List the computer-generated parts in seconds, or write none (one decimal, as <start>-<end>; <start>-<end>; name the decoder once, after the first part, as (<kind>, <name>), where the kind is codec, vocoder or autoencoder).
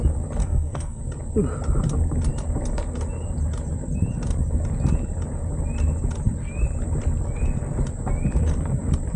0.4-1.0 (codec, SNAC)